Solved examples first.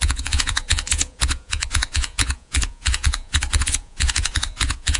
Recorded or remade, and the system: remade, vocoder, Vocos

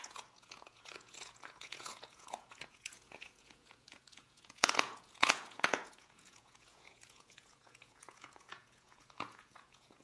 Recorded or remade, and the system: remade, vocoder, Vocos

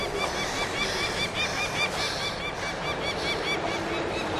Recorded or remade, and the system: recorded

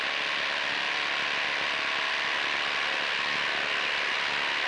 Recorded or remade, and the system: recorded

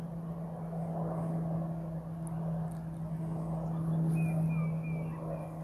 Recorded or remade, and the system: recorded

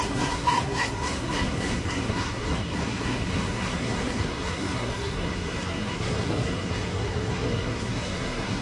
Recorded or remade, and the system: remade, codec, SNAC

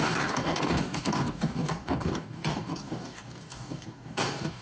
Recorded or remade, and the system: remade, codec, DAC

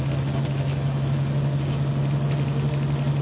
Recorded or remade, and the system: recorded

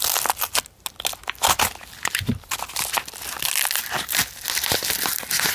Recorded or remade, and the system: recorded